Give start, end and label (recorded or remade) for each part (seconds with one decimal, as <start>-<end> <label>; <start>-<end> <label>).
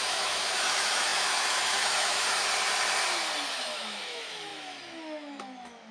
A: 0.0-2.4 remade; 2.4-3.5 recorded; 3.5-5.9 remade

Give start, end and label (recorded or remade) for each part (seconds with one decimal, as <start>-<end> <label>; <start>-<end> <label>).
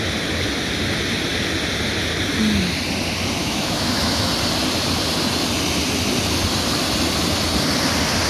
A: 0.0-3.4 recorded; 3.4-4.3 remade; 4.3-8.3 recorded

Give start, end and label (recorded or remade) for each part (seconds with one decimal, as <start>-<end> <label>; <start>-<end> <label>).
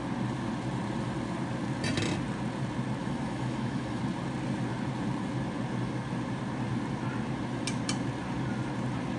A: 0.0-3.0 recorded; 3.0-4.0 remade; 4.0-9.2 recorded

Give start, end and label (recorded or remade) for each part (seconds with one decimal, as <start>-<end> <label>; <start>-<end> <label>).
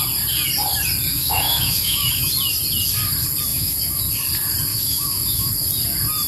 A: 0.0-1.1 recorded; 1.1-2.3 remade; 2.3-3.5 recorded; 3.5-4.0 remade; 4.0-4.7 recorded; 4.7-5.5 remade; 5.5-6.3 recorded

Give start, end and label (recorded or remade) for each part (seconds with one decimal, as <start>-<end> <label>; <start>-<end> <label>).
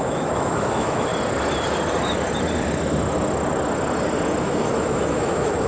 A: 0.0-1.1 remade; 1.1-4.4 recorded; 4.4-5.7 remade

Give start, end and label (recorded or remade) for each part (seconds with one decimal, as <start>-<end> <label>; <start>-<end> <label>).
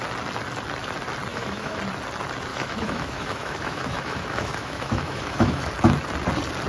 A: 0.0-1.3 recorded; 1.3-1.8 remade; 1.8-2.5 recorded; 2.5-5.7 remade; 5.7-6.7 recorded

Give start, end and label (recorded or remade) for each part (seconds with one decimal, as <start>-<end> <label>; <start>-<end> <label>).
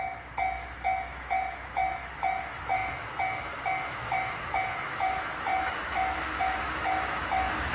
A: 0.0-7.7 remade